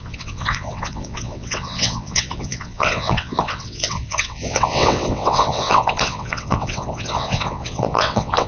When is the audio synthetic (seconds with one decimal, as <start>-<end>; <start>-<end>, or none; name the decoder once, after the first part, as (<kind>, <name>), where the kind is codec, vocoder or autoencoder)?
0.0-8.5 (vocoder, WaveNeXt)